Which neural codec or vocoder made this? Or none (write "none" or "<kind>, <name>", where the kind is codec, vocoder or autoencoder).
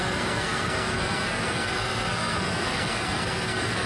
codec, SNAC